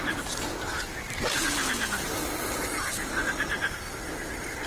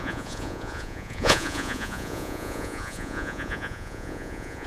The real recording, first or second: first